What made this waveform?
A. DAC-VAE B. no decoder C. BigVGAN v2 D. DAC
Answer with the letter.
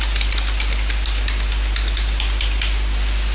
B